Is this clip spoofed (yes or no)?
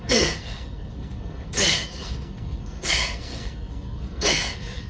yes